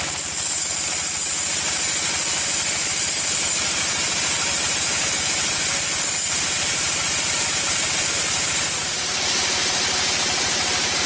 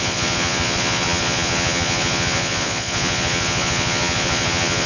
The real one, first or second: first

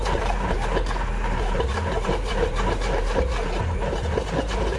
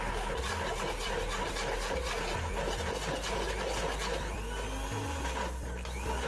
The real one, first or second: second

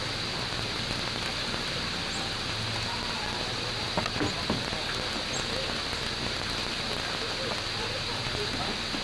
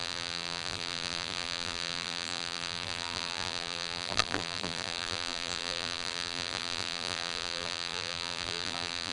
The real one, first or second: first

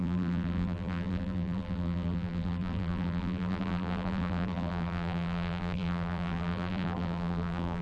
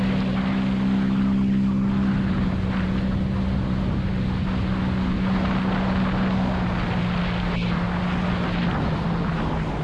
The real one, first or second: second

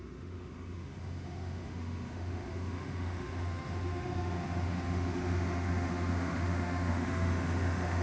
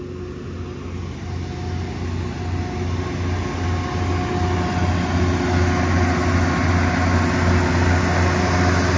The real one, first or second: second